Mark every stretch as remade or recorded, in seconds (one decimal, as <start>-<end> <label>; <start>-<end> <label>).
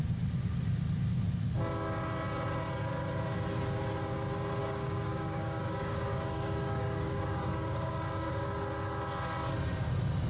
0.0-4.6 recorded; 4.6-8.5 remade; 8.5-10.3 recorded